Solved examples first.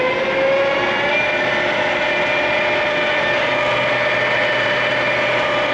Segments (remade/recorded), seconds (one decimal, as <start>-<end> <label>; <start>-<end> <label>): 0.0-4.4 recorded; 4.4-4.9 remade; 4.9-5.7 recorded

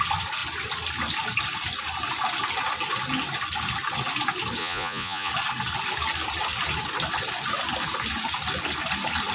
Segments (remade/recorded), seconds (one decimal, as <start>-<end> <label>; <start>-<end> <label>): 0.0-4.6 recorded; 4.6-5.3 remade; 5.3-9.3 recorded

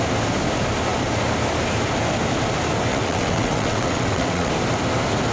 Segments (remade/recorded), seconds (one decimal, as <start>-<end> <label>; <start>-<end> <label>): 0.0-2.9 recorded; 2.9-4.5 remade; 4.5-5.3 recorded

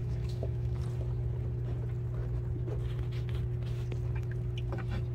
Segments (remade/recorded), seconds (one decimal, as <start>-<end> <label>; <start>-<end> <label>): 0.0-0.8 remade; 0.8-5.1 recorded

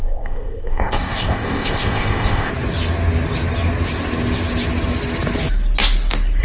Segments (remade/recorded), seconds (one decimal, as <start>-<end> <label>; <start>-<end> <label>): 0.0-2.5 remade; 2.5-6.4 recorded